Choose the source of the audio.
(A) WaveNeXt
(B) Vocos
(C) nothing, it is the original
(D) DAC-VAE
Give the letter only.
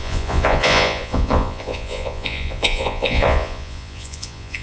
B